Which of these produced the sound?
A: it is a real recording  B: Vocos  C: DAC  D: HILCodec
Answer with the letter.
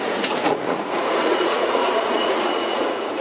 B